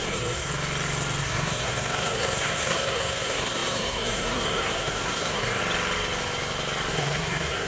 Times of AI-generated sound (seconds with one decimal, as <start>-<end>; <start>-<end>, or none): 0.0-0.5; 1.2-5.6; 6.9-7.7